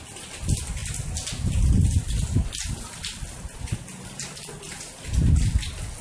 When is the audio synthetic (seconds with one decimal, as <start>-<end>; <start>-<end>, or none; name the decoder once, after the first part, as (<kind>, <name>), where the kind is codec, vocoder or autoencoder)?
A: none